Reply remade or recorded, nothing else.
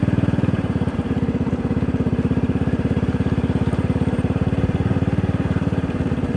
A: remade